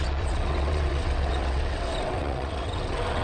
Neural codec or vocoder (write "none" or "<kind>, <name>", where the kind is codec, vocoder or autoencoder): vocoder, WaveNeXt